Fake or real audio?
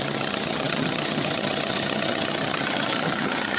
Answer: fake